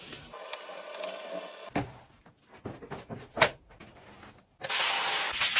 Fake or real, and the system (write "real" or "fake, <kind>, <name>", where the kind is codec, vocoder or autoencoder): real